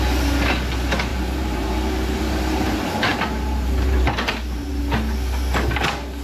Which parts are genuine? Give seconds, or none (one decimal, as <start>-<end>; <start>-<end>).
0.0-1.1; 4.8-6.2